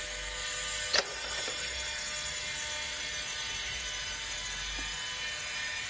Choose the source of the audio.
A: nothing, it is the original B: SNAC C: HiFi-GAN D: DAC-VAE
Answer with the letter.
A